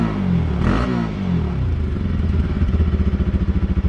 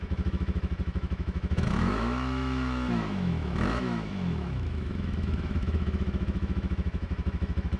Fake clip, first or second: second